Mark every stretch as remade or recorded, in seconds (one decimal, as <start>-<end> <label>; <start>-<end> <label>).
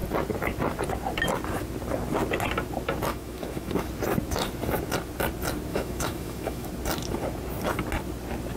0.0-3.1 recorded; 3.1-3.9 remade; 3.9-5.7 recorded; 5.7-6.7 remade; 6.7-8.6 recorded